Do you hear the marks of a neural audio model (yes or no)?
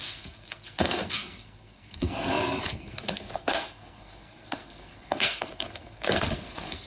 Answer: yes